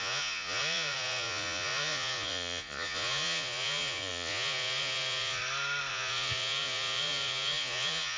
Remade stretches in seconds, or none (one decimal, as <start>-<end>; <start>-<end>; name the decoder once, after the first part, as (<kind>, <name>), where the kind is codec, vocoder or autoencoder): 0.0-5.4 (vocoder, Vocos); 5.9-8.2